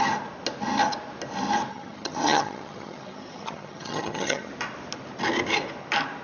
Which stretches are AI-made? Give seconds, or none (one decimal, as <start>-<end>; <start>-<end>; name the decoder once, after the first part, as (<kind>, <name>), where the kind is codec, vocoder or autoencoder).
1.7-4.5 (vocoder, HiFi-GAN)